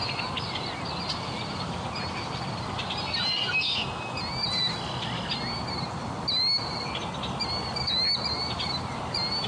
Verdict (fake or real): real